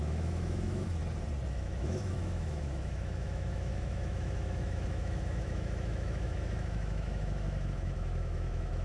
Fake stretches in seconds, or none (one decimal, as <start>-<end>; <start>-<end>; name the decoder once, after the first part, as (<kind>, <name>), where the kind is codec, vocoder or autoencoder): 0.0-1.0 (autoencoder, DAC-VAE); 1.5-8.8